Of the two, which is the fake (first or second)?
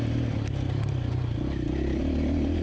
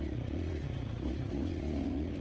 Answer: second